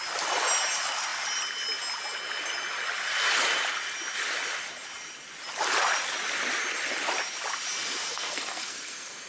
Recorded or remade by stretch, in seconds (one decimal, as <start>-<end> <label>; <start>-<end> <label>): 0.0-8.1 recorded; 8.1-9.3 remade